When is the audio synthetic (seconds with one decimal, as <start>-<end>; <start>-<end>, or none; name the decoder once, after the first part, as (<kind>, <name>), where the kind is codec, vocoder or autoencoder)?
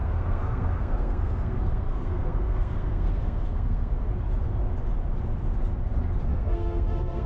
0.0-4.1 (codec, SNAC); 6.3-7.3